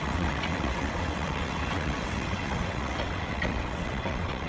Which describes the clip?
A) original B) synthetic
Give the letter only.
B